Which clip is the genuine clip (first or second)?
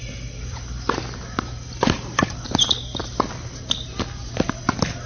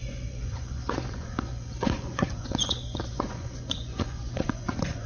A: first